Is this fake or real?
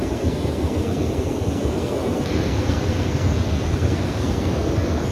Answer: fake